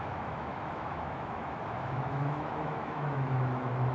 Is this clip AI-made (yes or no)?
yes